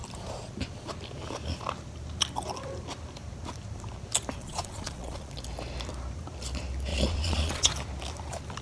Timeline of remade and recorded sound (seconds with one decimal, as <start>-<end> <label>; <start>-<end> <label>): 0.0-4.4 recorded; 4.4-5.3 remade; 5.3-6.9 recorded; 6.9-7.7 remade; 7.7-8.6 recorded